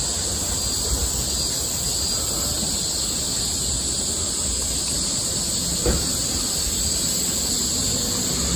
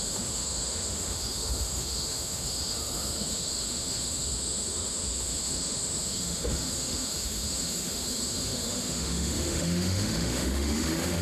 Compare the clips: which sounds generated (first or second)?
second